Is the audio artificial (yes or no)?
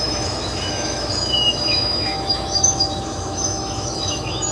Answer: yes